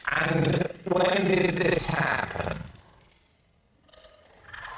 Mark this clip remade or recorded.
recorded